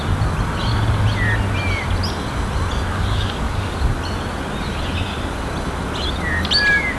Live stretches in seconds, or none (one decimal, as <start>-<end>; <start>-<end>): 0.0-2.9; 3.8-7.0